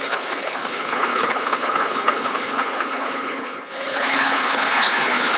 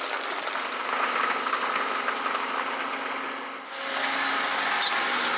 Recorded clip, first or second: second